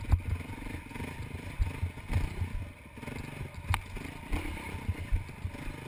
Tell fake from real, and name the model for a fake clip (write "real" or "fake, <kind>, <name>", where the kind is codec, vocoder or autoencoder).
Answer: real